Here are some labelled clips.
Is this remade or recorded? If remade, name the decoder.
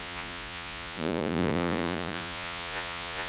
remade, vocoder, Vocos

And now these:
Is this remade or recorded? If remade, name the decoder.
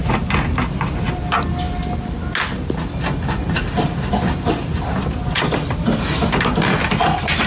recorded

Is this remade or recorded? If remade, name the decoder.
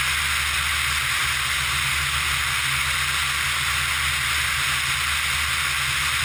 recorded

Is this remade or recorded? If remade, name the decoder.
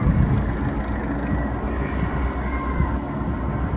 recorded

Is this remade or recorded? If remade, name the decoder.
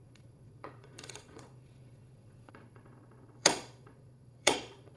remade, vocoder, Vocos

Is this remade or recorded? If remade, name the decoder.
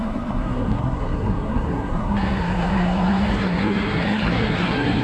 remade, codec, SNAC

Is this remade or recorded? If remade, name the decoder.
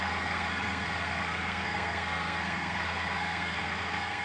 remade, codec, SNAC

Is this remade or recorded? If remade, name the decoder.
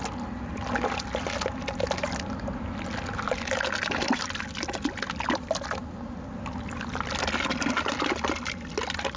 recorded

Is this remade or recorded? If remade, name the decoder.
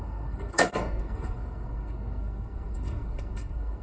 remade, codec, SNAC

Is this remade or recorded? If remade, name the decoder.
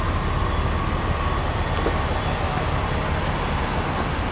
recorded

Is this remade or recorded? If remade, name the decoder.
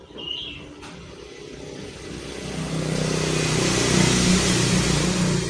recorded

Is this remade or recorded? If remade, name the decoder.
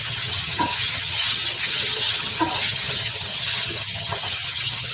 remade, vocoder, HiFi-GAN